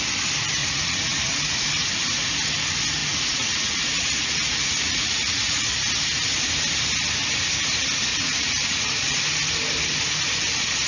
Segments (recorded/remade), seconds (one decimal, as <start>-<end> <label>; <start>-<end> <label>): 0.0-0.6 recorded; 0.6-1.7 remade; 1.7-3.0 recorded; 3.0-5.7 remade; 5.7-8.1 recorded; 8.1-9.2 remade; 9.2-10.9 recorded